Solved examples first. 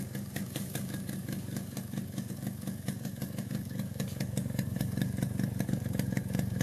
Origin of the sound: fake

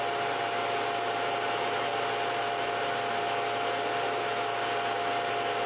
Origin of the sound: real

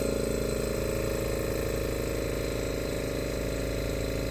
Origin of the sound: real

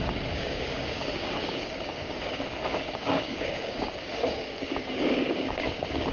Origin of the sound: fake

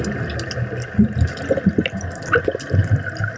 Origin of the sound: real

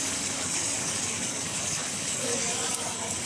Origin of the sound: fake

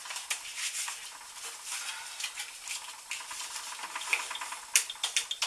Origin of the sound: real